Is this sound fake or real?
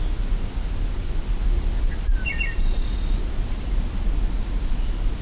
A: real